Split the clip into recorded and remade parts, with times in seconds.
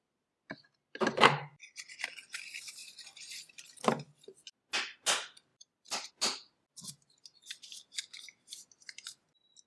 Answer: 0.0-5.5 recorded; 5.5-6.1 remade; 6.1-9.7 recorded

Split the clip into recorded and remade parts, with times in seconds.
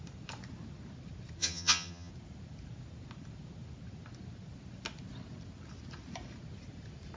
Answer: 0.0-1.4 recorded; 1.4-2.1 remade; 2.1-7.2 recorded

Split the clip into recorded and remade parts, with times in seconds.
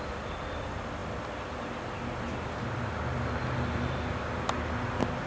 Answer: 0.0-5.3 recorded